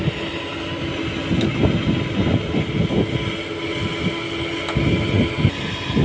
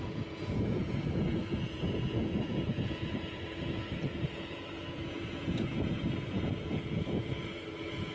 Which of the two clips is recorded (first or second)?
first